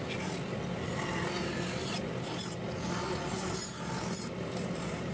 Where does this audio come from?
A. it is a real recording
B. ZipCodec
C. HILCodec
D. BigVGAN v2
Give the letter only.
A